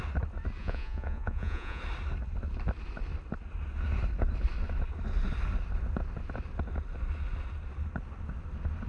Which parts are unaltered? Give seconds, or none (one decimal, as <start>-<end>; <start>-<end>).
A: 0.0-0.6; 1.8-8.9